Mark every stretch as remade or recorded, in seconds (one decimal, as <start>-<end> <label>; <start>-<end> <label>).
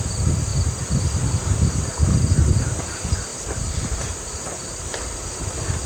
0.0-3.3 recorded; 3.3-5.4 remade; 5.4-5.9 recorded